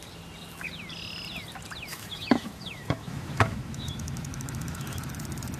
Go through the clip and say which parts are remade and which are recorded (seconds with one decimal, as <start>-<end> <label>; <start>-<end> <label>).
0.0-1.9 recorded; 1.9-5.1 remade; 5.1-5.6 recorded